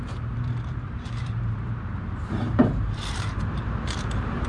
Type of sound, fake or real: fake